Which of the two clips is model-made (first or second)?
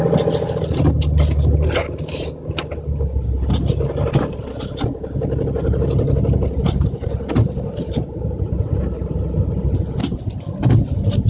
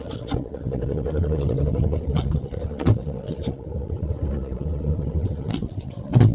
second